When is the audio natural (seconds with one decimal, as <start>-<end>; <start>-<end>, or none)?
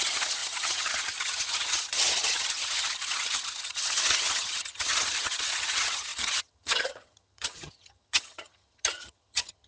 none